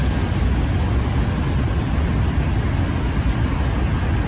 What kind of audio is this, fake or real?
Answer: real